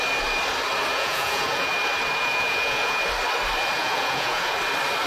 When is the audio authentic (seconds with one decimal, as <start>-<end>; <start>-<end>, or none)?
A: 0.0-0.9; 1.7-2.2; 3.0-3.8; 4.5-5.1